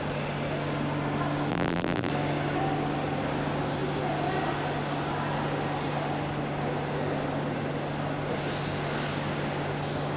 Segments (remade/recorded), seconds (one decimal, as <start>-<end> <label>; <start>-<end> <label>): 0.0-1.5 recorded; 1.5-2.1 remade; 2.1-10.2 recorded